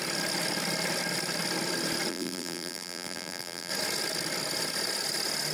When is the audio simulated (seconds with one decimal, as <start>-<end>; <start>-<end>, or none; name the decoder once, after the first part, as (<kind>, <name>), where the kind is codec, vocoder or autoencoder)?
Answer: 2.1-3.7 (vocoder, BigVGAN v2)